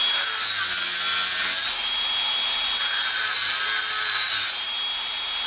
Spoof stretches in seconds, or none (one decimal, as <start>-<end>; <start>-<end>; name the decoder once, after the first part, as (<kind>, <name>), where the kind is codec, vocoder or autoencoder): none